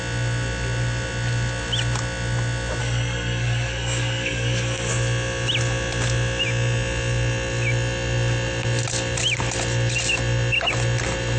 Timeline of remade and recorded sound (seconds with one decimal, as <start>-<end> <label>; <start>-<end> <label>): 0.0-2.8 recorded; 2.8-4.9 remade; 4.9-11.4 recorded